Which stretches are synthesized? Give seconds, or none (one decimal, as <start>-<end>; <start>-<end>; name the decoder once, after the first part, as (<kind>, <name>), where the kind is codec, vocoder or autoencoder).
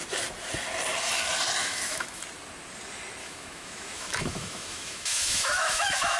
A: 1.6-2.2 (autoencoder, DAC-VAE); 3.2-6.2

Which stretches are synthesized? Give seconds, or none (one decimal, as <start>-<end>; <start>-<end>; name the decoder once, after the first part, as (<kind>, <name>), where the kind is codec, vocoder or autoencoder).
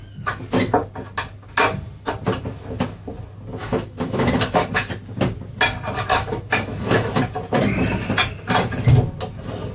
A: 3.6-4.9 (autoencoder, DAC-VAE); 6.1-7.2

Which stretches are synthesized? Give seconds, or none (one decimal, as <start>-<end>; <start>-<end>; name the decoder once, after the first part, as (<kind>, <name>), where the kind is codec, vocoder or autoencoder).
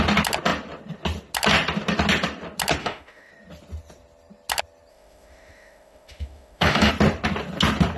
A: 2.8-3.3 (autoencoder, DAC-VAE); 4.9-6.9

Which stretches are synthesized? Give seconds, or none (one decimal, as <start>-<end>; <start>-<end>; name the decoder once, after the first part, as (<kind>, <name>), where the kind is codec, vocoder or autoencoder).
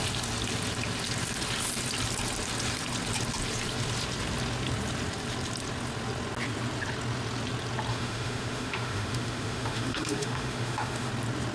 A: 7.9-11.1 (autoencoder, DAC-VAE)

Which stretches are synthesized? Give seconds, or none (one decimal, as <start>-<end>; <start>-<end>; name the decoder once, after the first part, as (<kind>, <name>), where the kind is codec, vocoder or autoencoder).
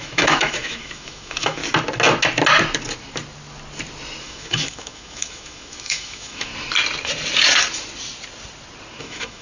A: 0.0-1.6 (autoencoder, DAC-VAE); 4.2-6.5; 9.0-9.4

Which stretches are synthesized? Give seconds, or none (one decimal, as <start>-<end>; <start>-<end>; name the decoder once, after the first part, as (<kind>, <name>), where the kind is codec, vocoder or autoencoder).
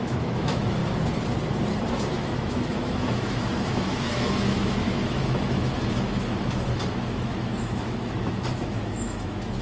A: 0.0-0.8 (autoencoder, DAC-VAE); 1.9-9.6